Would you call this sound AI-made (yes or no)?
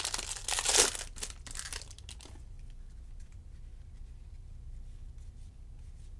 no